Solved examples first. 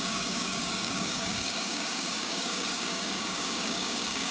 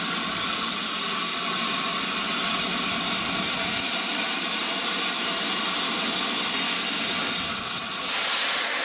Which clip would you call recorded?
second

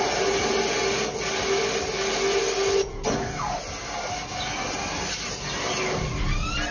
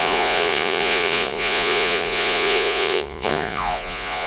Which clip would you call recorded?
first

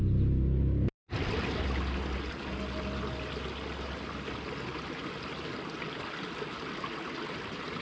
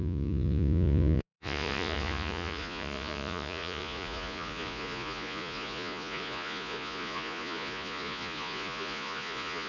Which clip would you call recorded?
first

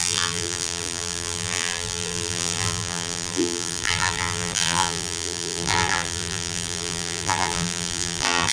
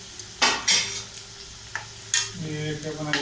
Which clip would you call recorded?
second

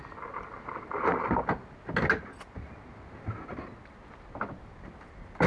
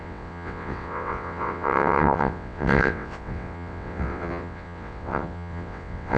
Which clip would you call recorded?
first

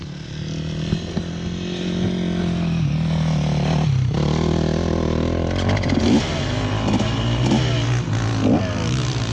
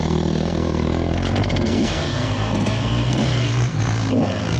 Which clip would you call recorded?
first